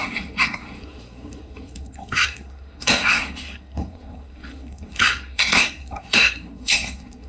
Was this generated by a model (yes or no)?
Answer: yes